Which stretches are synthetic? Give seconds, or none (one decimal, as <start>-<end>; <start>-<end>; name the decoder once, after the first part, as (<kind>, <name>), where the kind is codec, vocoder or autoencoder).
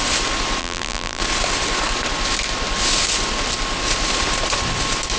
0.6-1.2 (vocoder, BigVGAN v2)